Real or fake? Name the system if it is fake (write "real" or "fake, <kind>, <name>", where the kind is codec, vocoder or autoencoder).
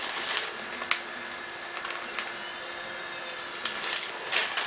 real